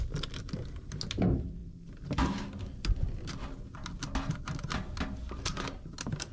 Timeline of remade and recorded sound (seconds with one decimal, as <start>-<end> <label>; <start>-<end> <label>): 0.0-6.3 recorded